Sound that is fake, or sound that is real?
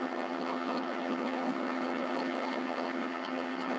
fake